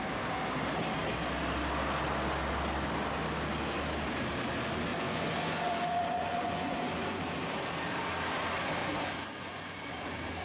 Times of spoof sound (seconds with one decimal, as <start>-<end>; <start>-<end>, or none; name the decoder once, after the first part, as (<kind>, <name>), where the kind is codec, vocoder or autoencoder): 4.9-7.2 (vocoder, Vocos); 8.8-9.9